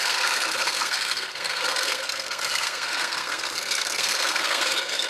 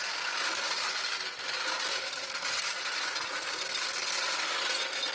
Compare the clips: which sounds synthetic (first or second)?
first